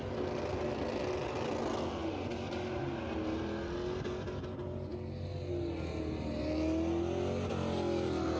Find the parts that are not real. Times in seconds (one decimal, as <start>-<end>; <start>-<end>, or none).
none